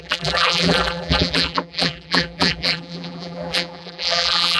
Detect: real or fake fake